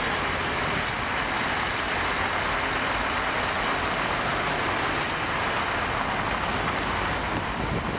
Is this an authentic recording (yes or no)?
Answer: yes